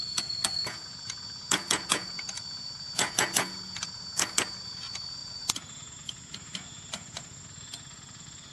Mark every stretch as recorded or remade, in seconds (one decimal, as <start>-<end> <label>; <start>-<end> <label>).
0.0-8.5 remade